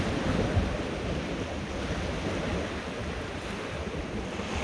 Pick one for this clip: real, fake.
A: real